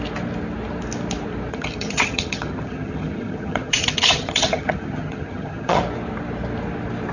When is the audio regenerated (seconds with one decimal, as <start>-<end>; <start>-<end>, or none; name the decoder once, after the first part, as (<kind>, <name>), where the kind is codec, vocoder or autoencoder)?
1.5-5.8 (vocoder, HiFi-GAN)